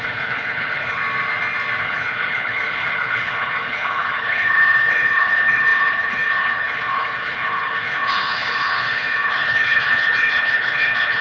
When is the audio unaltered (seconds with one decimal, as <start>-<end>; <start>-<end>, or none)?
1.0-1.8